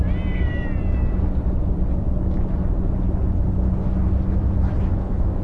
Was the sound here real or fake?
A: real